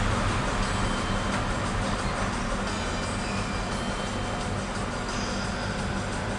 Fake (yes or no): no